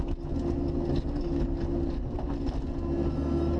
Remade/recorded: recorded